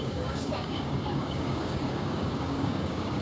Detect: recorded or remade remade